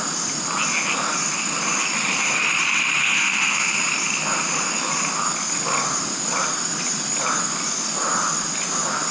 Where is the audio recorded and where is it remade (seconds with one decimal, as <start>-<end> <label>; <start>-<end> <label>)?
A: 0.0-3.0 recorded; 3.0-3.8 remade; 3.8-9.1 recorded

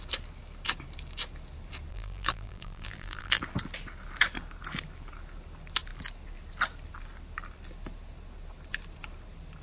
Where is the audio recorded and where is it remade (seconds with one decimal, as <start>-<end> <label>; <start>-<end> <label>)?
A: 0.0-1.9 recorded; 1.9-3.4 remade; 3.4-9.6 recorded

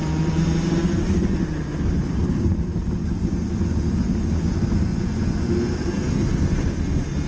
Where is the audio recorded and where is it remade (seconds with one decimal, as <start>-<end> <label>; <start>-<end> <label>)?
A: 0.0-4.9 recorded; 4.9-5.4 remade; 5.4-7.3 recorded